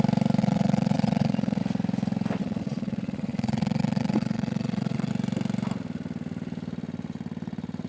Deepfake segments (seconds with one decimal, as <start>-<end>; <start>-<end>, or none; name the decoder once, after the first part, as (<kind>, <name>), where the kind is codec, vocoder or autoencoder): 0.4-1.6 (vocoder, Vocos); 2.4-5.1